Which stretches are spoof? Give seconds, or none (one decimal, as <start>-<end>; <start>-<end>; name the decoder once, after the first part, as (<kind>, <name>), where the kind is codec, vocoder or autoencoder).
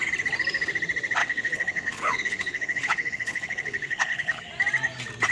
1.2-4.4 (codec, HILCodec)